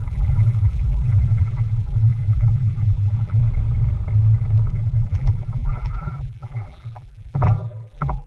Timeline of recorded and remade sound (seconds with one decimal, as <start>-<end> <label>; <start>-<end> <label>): 0.0-3.4 remade; 3.4-4.7 recorded; 4.7-8.3 remade